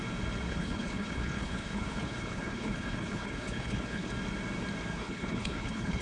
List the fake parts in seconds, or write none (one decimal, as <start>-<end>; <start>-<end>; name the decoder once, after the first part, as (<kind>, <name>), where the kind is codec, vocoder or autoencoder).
0.5-4.1 (codec, HILCodec); 4.9-6.0